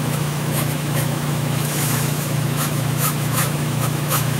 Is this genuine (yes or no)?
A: no